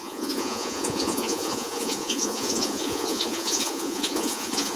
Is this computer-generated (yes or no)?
yes